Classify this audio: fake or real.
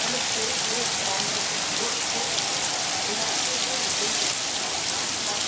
real